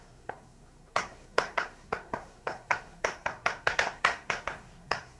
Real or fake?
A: fake